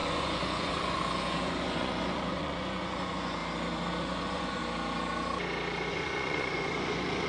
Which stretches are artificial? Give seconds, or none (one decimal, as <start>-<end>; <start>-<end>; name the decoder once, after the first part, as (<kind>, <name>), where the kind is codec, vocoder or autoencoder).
0.0-3.4 (vocoder, Vocos); 4.0-4.6; 5.9-7.3